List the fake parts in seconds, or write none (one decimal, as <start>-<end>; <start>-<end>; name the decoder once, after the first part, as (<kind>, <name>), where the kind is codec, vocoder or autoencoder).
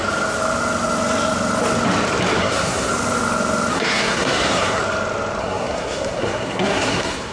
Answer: 2.4-2.9 (codec, SNAC); 3.7-4.8; 5.4-7.3